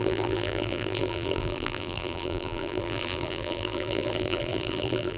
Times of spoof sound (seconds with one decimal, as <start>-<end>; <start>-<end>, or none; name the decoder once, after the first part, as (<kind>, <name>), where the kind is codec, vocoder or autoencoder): 0.0-5.2 (vocoder, BigVGAN v2)